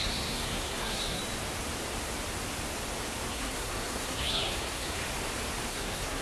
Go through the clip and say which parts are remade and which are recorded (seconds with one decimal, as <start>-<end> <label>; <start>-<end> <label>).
0.0-1.2 remade; 1.2-3.3 recorded; 3.3-5.0 remade; 5.0-5.7 recorded; 5.7-6.2 remade